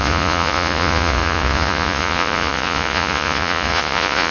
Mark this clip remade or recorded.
remade